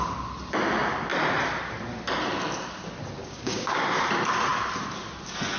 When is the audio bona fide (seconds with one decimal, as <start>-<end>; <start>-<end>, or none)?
0.0-3.2; 3.8-5.6